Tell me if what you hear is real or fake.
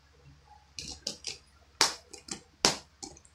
real